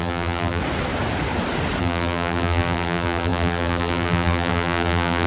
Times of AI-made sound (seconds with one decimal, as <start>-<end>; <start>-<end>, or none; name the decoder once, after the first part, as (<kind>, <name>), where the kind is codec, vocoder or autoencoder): 0.0-0.6 (vocoder, BigVGAN v2); 1.8-5.3